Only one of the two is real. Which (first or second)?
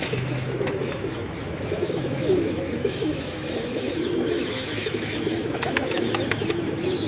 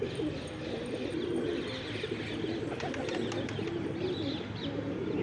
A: second